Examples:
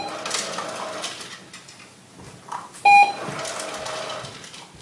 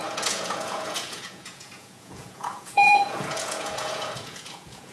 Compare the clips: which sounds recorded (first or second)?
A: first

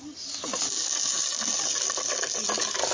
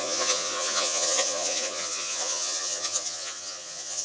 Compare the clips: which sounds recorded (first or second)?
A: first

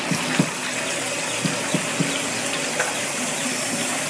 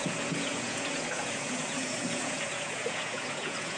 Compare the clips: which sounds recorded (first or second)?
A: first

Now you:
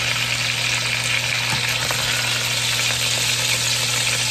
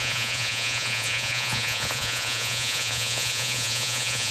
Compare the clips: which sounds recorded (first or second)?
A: first